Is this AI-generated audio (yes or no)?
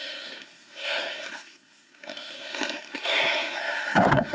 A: yes